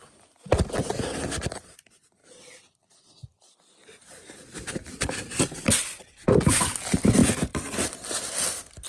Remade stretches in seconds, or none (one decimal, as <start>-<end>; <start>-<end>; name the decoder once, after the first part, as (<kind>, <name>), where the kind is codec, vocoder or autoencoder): 2.2-5.8 (vocoder, BigVGAN v2); 7.2-8.2